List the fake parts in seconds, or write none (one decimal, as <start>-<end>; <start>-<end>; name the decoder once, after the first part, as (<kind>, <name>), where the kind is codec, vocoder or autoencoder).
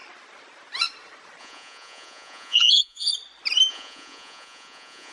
1.4-3.1 (vocoder, Vocos); 3.7-5.1